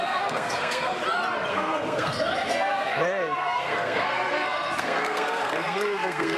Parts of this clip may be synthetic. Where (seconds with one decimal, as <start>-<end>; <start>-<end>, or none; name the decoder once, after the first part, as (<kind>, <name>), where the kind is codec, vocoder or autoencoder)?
0.0-1.0 (codec, SNAC); 1.5-6.4